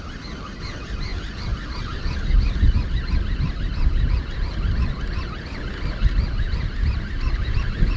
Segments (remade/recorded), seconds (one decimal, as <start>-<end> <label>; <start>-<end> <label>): 0.0-8.0 recorded